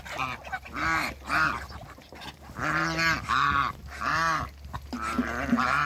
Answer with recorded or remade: recorded